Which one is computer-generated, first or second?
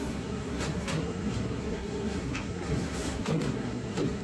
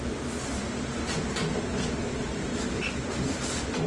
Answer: first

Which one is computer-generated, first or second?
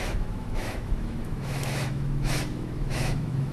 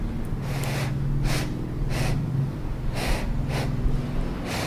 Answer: first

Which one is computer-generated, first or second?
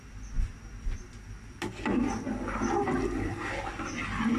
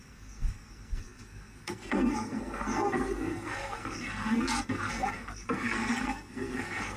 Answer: second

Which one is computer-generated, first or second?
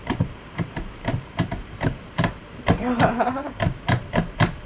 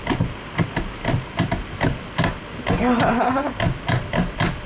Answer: first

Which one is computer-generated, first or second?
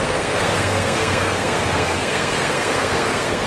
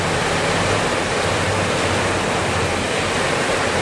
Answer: first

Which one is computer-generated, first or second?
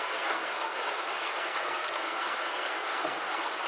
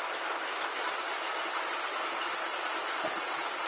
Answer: first